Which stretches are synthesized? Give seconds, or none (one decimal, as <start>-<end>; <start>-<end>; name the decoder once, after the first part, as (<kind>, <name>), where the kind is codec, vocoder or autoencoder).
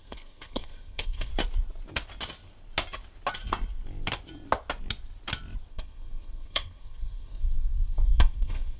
0.0-1.3 (codec, SNAC); 5.7-8.8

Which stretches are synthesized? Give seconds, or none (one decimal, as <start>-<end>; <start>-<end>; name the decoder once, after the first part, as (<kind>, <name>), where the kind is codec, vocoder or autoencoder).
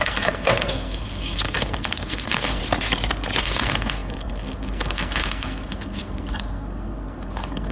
0.0-2.6 (codec, SNAC); 3.4-7.7